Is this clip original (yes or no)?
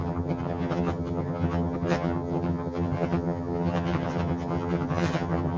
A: no